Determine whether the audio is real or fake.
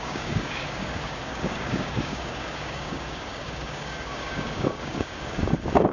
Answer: fake